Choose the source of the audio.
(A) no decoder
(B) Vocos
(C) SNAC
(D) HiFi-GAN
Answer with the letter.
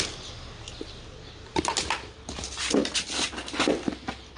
A